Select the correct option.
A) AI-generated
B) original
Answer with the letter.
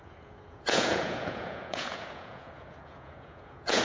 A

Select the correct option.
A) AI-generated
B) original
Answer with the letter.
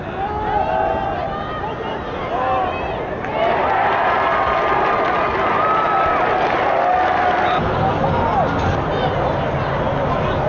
B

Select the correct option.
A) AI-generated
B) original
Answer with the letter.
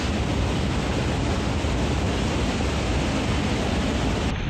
B